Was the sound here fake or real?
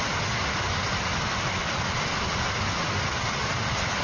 real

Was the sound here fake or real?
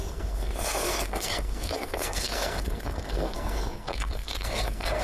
fake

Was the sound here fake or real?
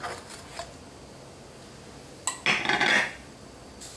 real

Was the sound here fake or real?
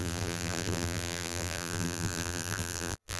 fake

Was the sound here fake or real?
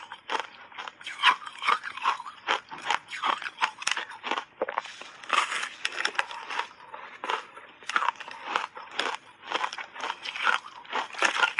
real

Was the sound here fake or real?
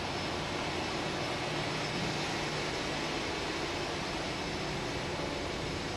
real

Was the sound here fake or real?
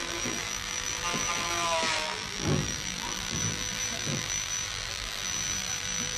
fake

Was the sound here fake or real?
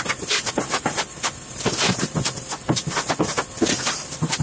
fake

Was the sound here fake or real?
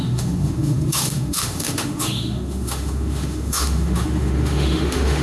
fake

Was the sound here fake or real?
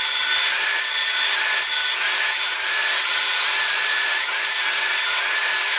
real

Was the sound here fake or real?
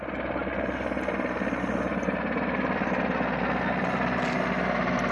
real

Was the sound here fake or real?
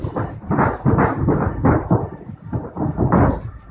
real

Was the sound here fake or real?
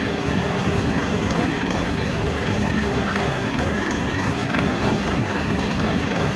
fake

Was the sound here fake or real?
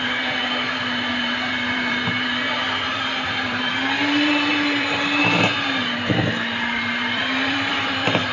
fake